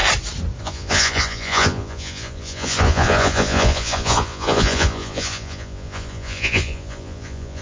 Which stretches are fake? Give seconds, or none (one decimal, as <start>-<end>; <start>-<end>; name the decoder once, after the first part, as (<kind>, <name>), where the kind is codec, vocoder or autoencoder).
0.6-7.6 (vocoder, Vocos)